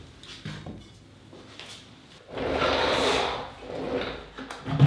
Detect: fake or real real